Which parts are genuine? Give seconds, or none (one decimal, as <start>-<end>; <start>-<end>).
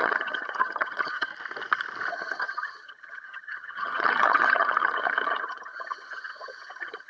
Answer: 1.3-2.1